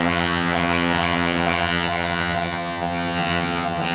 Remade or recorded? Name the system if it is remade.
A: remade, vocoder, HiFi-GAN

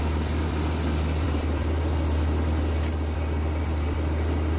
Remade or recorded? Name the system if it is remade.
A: recorded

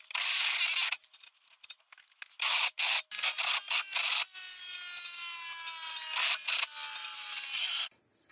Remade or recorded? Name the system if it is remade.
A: recorded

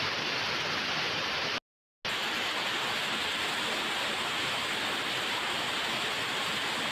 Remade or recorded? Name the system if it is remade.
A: recorded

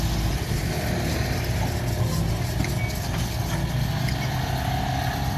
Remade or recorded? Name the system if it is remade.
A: recorded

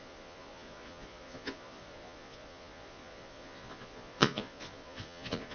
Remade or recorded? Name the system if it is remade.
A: remade, vocoder, Vocos